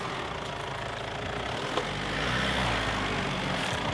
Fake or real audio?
real